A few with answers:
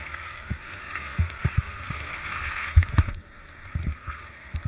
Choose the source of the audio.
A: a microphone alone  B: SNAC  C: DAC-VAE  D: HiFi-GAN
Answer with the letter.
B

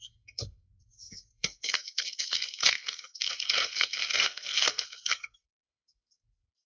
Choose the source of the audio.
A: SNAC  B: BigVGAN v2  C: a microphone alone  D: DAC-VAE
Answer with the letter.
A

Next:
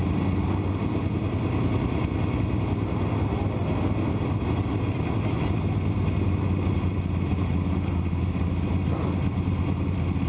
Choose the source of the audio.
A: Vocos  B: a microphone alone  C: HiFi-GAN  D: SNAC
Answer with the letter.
B